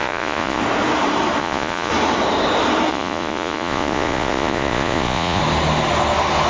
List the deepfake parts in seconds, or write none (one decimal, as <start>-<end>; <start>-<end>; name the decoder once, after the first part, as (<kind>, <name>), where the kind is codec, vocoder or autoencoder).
0.0-0.6 (vocoder, Vocos); 1.4-1.9; 2.9-5.4

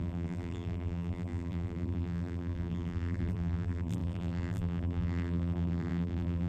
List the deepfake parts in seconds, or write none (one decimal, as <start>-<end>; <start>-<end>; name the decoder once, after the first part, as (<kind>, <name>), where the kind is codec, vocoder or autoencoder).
0.0-6.5 (vocoder, BigVGAN v2)